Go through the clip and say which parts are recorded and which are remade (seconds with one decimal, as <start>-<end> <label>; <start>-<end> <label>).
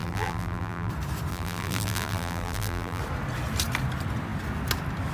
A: 0.0-0.9 remade; 0.9-1.3 recorded; 1.3-3.0 remade; 3.0-5.1 recorded